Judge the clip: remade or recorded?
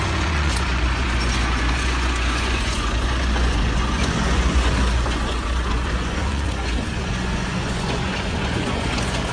remade